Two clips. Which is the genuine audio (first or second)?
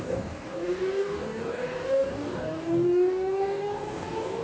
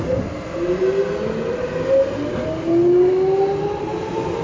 second